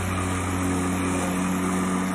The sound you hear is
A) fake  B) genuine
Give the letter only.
B